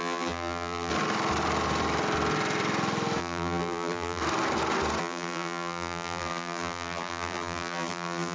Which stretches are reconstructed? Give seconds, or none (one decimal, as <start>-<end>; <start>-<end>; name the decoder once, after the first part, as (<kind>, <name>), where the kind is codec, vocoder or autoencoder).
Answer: 0.0-0.9 (vocoder, BigVGAN v2); 3.2-4.2; 5.0-8.3